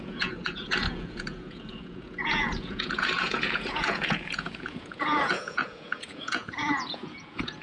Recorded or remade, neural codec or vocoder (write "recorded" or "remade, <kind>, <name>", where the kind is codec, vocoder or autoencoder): remade, vocoder, Vocos